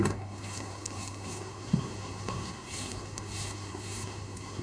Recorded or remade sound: remade